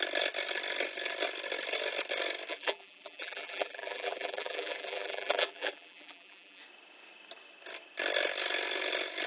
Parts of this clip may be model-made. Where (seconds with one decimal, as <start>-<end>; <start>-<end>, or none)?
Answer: 2.5-6.6